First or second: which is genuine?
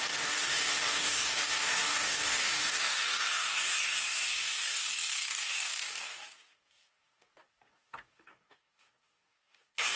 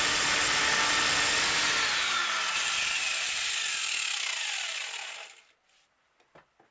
second